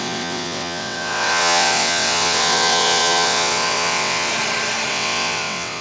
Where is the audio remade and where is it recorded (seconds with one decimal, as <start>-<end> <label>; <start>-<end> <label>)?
0.0-4.3 remade; 4.3-4.9 recorded; 4.9-5.8 remade